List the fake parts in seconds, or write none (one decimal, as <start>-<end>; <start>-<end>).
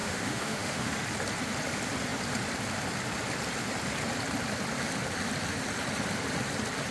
0.0-0.9